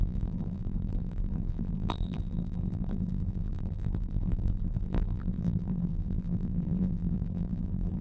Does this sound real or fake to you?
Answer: fake